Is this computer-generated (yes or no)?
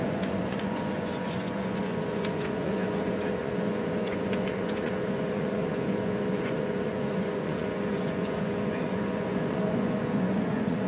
yes